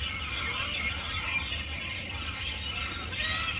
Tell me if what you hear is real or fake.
real